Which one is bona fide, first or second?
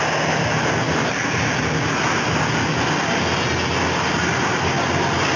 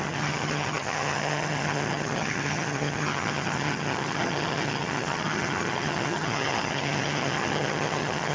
first